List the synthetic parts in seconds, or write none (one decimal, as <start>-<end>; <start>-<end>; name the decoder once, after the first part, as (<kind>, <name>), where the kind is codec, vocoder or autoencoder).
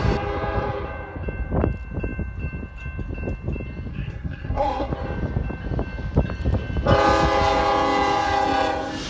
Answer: 3.9-4.9 (codec, SNAC)